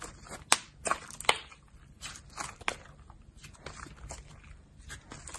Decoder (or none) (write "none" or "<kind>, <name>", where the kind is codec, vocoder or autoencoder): none